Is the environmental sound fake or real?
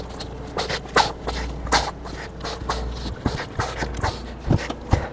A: real